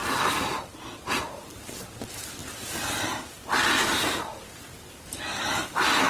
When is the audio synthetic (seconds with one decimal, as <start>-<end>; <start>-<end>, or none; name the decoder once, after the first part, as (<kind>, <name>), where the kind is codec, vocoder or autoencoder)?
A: none